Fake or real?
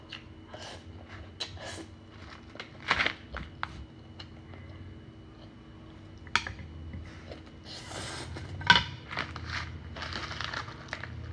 real